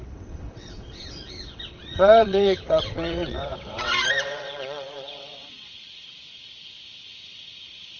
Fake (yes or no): yes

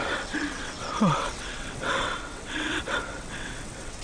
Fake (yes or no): yes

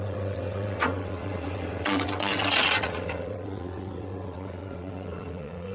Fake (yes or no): yes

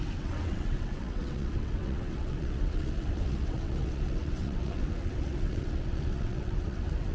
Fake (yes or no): yes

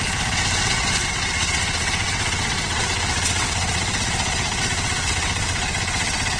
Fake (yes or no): yes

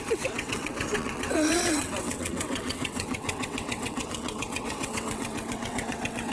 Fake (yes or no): yes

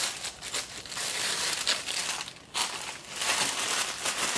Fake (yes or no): no